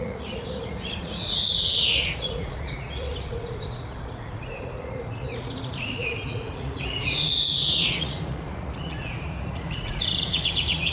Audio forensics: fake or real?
fake